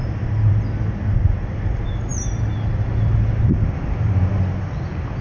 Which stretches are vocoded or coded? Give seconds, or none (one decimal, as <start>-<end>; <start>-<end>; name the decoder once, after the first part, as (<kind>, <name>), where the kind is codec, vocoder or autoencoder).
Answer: none